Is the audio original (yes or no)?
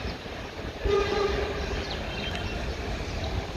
no